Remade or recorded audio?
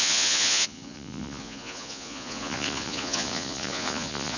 remade